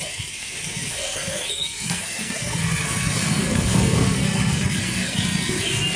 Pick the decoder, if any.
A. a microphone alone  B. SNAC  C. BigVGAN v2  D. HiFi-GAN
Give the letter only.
B